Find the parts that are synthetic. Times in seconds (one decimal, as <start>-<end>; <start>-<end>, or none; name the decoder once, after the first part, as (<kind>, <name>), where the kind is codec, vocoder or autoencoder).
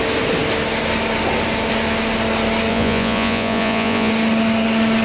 2.7-4.1 (vocoder, Vocos)